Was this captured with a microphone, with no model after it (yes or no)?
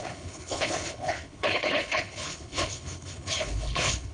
no